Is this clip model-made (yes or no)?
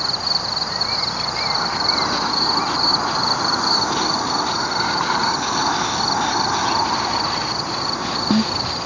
no